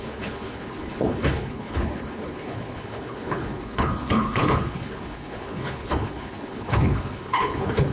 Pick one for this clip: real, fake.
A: fake